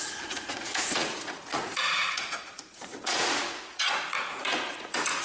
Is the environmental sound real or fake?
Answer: fake